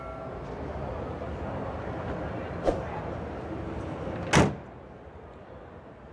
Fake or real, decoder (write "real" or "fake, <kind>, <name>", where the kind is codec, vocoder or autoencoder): real